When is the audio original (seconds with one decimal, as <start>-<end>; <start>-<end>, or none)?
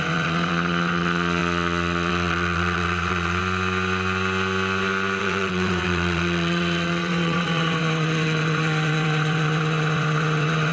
3.4-5.2